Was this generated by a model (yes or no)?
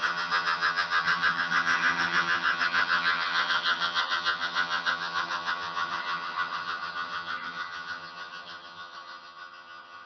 yes